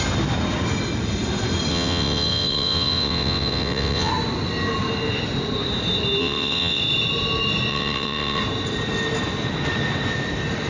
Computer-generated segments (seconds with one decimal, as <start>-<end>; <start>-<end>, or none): 1.7-4.1; 6.2-6.8; 7.7-8.4

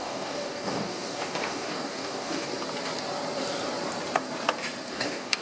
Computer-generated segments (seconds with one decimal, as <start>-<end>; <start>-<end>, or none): 0.0-2.5; 4.9-5.4

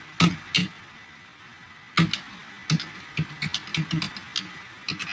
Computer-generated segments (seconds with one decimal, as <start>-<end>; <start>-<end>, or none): none

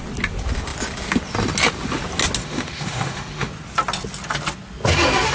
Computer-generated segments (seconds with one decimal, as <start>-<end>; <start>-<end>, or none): 2.4-3.5

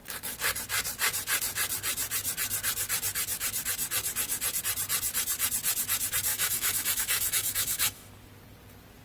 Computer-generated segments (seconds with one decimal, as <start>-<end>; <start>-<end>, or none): 6.3-8.1

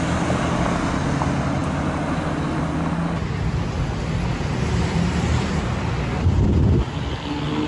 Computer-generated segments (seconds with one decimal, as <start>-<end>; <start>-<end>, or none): none

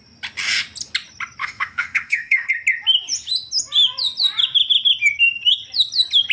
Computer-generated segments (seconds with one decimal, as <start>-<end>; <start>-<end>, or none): 1.4-2.5

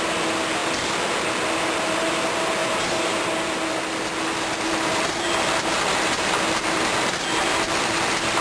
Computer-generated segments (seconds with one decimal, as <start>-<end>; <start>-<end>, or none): none